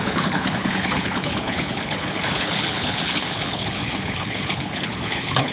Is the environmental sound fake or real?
fake